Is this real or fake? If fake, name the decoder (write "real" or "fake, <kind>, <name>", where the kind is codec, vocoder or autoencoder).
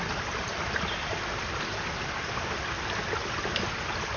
real